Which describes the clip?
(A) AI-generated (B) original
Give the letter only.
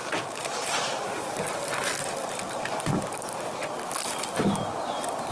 B